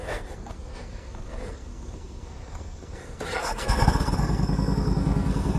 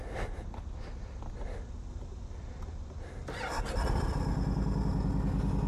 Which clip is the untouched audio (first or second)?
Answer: second